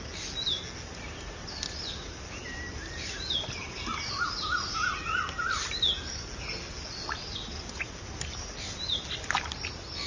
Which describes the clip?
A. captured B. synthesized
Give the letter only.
A